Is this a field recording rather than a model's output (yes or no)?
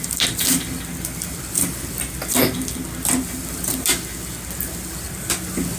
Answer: yes